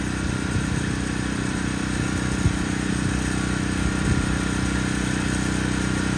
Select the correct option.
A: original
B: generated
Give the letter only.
A